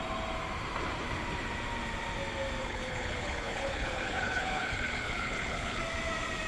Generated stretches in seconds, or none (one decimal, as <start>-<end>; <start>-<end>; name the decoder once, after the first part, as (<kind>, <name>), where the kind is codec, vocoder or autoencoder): 2.6-5.8 (codec, HILCodec)